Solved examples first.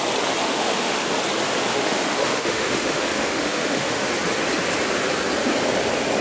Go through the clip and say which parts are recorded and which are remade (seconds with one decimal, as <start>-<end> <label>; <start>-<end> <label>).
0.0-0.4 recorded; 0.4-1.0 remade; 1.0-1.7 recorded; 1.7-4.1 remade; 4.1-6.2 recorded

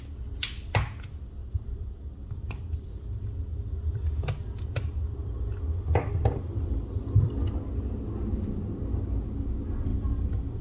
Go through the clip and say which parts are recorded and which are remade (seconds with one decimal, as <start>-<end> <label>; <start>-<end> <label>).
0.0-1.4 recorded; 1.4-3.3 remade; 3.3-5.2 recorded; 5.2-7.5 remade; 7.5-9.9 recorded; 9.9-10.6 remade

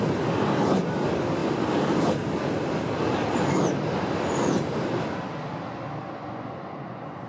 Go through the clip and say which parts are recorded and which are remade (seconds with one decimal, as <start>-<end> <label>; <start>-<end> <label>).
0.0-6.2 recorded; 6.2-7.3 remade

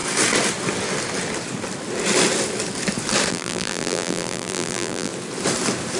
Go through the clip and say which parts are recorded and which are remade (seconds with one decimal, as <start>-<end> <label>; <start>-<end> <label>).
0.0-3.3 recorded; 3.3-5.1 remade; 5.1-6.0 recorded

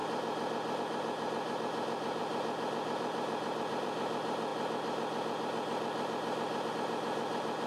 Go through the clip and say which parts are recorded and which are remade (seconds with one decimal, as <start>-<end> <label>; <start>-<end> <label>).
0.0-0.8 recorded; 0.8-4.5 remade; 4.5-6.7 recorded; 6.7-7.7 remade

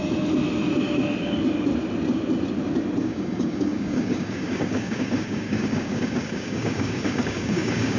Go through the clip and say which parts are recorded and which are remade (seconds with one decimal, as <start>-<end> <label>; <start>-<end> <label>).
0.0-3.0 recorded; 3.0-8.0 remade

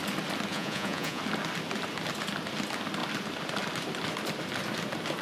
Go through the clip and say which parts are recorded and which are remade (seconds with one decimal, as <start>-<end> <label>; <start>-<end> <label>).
0.0-0.5 recorded; 0.5-1.2 remade; 1.2-5.2 recorded